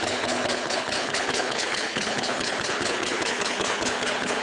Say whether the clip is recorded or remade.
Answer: remade